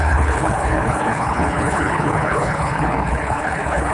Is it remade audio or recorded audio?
remade